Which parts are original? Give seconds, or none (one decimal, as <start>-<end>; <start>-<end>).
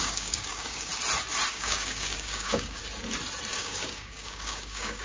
0.9-1.5; 2.8-3.5